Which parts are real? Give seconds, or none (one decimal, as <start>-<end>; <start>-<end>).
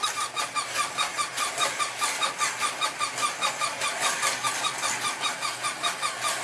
0.0-1.1; 2.7-3.7; 5.1-6.4